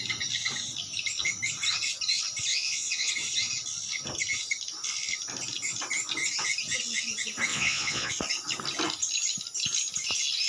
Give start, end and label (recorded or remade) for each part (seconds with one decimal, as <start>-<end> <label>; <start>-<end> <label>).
0.0-2.5 recorded; 2.5-3.1 remade; 3.1-7.5 recorded; 7.5-8.1 remade; 8.1-10.5 recorded

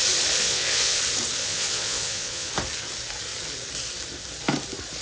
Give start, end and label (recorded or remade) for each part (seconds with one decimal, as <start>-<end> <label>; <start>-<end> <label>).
0.0-0.4 recorded; 0.4-1.0 remade; 1.0-1.4 recorded; 1.4-2.5 remade; 2.5-5.0 recorded

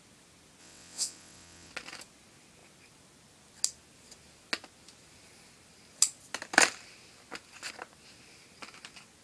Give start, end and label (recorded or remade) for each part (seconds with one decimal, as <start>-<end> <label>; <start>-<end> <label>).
0.0-0.6 recorded; 0.6-1.7 remade; 1.7-9.2 recorded

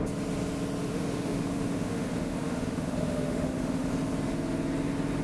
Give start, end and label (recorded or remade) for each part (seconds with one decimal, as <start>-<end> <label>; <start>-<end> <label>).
0.0-0.8 recorded; 0.8-3.9 remade; 3.9-5.2 recorded

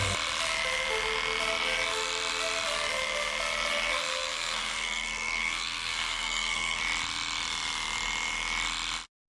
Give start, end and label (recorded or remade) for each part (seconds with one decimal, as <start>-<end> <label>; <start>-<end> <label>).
0.0-4.1 recorded; 4.1-6.8 remade; 6.8-9.3 recorded

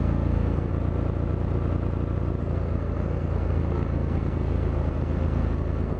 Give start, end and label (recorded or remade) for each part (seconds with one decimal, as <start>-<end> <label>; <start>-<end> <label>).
0.0-0.7 remade; 0.7-2.4 recorded; 2.4-6.0 remade